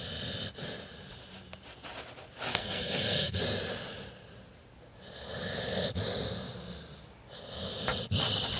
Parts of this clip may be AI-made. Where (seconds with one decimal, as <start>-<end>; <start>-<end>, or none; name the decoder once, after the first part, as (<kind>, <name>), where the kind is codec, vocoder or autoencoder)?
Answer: 2.5-3.4 (codec, SNAC)